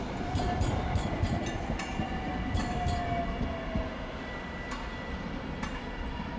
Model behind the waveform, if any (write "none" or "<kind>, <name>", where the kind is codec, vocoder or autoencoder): none